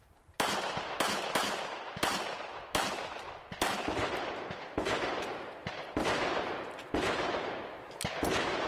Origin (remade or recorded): remade